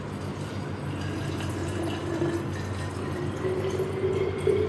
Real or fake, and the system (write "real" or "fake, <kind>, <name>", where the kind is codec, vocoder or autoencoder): real